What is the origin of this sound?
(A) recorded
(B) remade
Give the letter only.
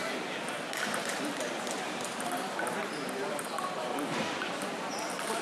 B